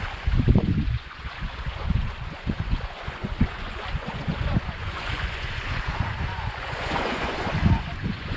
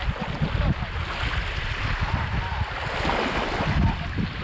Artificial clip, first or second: first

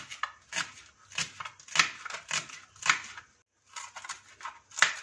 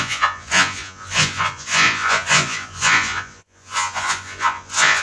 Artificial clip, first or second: second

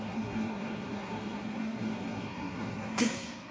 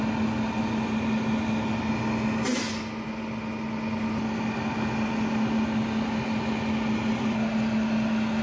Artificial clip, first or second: first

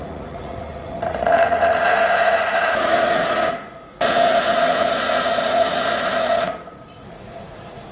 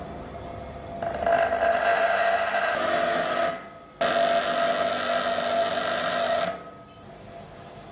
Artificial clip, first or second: first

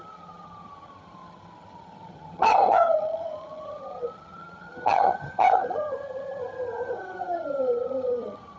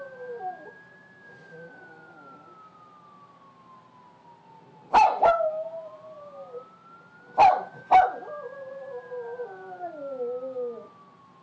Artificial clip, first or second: first